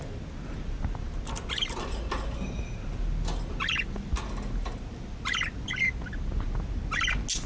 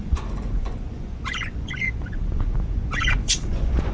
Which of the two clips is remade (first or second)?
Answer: second